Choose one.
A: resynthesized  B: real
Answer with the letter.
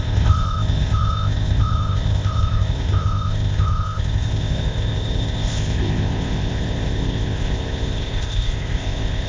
A